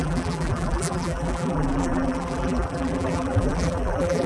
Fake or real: fake